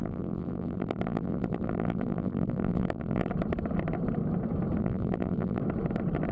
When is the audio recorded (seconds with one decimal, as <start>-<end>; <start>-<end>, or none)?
3.3-4.8; 5.6-6.3